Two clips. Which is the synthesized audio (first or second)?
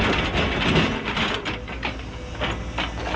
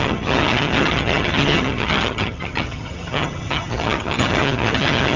second